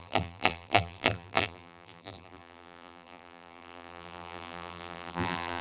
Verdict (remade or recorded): remade